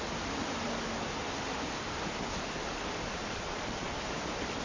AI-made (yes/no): no